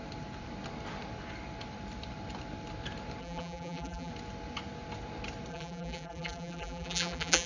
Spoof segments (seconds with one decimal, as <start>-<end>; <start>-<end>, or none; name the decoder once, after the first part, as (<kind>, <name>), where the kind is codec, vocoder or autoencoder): 3.2-4.1 (vocoder, BigVGAN v2); 5.5-7.5